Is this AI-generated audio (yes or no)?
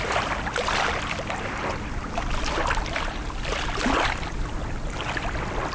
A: no